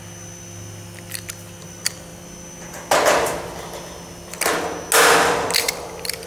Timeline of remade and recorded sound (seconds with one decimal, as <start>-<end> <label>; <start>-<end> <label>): 0.0-6.3 recorded